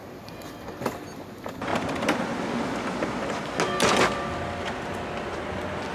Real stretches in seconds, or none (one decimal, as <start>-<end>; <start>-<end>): 0.0-5.9